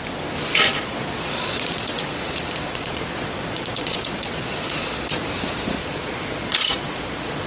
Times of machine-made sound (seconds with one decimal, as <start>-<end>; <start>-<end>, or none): 0.7-5.2; 5.8-7.5